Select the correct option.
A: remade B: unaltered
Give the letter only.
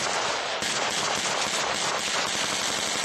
B